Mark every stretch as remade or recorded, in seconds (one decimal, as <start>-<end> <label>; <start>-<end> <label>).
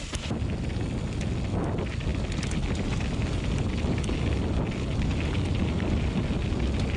0.0-7.0 recorded